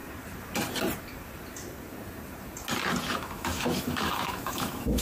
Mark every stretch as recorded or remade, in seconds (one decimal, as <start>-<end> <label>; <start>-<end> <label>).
0.0-3.0 recorded; 3.0-5.0 remade